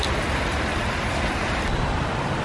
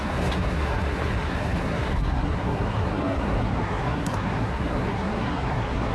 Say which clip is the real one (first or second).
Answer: first